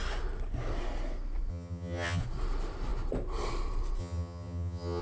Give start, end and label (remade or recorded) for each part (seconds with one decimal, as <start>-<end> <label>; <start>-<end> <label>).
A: 0.0-1.5 recorded; 1.5-2.2 remade; 2.2-4.0 recorded; 4.0-5.0 remade